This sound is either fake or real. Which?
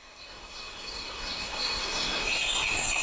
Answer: fake